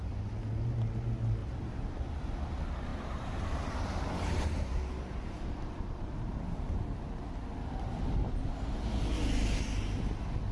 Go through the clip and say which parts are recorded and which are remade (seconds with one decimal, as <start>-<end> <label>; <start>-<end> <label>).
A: 0.0-1.4 recorded; 1.4-1.9 remade; 1.9-2.9 recorded; 2.9-7.1 remade; 7.1-10.5 recorded